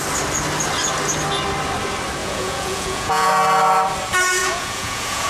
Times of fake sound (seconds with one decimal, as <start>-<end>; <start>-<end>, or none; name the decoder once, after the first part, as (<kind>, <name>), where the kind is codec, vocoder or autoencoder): 2.2-3.3 (vocoder, Vocos); 4.4-5.3